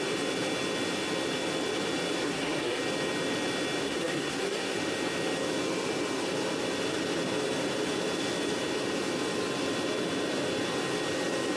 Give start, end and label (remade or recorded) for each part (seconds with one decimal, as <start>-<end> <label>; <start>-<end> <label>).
0.0-2.2 recorded; 2.2-2.8 remade; 2.8-3.8 recorded; 3.8-4.8 remade; 4.8-11.6 recorded